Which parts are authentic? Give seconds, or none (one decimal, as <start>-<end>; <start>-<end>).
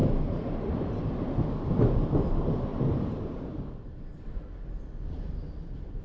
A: 0.0-2.7; 4.5-6.0